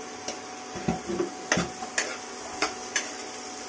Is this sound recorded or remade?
recorded